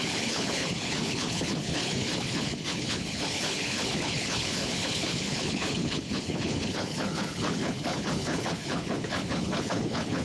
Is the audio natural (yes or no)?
no